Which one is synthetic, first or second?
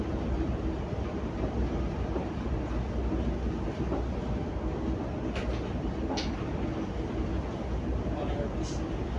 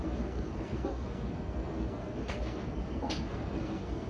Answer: second